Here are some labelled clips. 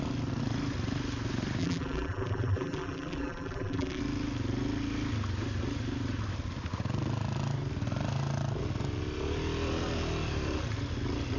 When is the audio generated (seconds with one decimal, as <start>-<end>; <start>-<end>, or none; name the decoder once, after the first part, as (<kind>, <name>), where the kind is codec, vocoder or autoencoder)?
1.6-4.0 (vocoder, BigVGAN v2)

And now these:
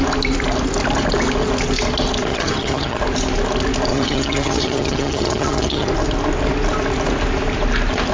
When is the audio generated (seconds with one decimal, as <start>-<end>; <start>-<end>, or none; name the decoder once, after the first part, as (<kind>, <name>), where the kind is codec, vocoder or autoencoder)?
2.3-3.0 (vocoder, HiFi-GAN); 3.9-5.9

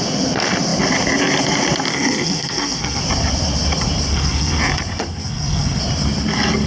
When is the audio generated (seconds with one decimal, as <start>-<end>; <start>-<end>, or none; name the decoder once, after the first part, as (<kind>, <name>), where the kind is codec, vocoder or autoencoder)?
1.9-3.0 (codec, SNAC); 4.1-4.6; 5.1-5.8

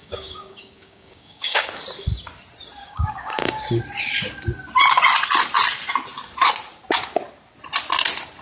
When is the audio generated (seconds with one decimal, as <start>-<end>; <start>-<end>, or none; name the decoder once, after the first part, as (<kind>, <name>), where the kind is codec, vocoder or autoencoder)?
0.0-1.7 (codec, DAC); 2.8-3.6

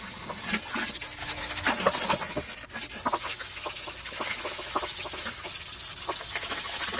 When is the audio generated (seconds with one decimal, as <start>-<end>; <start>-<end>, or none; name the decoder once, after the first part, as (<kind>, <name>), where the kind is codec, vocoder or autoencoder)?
1.2-1.7 (autoencoder, DAC-VAE); 3.3-5.5

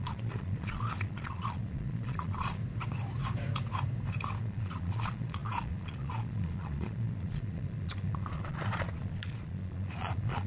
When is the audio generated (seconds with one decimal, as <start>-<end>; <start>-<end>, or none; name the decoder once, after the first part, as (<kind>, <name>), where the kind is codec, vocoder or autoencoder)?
0.0-2.6 (vocoder, Vocos); 4.4-10.5